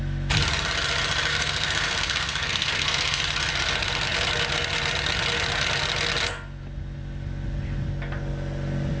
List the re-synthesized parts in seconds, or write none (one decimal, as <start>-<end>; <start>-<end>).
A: 1.3-3.2